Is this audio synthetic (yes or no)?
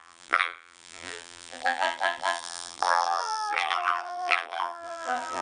yes